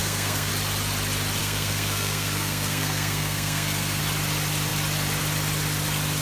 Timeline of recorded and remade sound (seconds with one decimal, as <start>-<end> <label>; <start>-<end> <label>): 0.0-0.5 remade; 0.5-1.4 recorded; 1.4-4.0 remade; 4.0-6.2 recorded